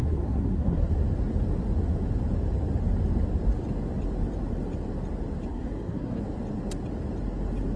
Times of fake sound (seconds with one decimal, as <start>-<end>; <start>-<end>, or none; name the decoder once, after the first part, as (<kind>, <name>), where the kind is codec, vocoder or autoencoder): 0.0-0.9 (codec, SNAC); 5.5-6.2